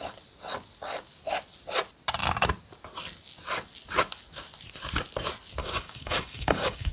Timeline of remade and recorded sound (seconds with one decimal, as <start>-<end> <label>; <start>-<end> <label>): 0.0-5.6 recorded; 5.6-6.9 remade